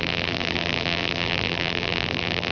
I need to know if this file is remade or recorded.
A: remade